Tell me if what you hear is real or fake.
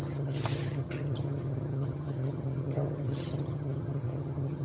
fake